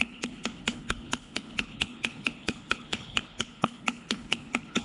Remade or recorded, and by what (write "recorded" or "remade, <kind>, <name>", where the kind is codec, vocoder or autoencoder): remade, codec, HILCodec